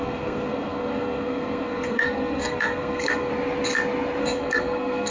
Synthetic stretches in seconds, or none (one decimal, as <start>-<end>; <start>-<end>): 0.0-3.3; 4.2-5.1